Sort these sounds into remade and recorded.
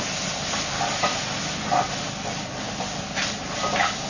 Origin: recorded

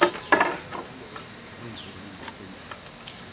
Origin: recorded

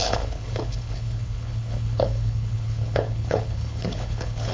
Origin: remade